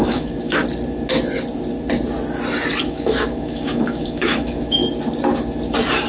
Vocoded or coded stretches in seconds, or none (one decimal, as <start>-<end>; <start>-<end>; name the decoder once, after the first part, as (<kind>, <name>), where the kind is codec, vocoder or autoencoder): 0.0-0.6 (autoencoder, DAC-VAE); 2.8-4.8